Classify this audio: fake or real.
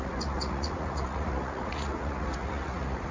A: fake